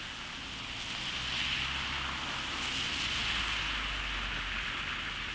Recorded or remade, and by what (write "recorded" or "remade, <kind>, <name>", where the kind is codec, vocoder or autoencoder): recorded